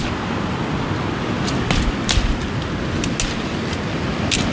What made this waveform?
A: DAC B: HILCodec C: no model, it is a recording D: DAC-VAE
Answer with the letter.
C